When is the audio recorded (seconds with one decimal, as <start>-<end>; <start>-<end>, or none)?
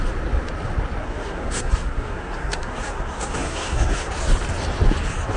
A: 0.0-1.0; 4.1-5.4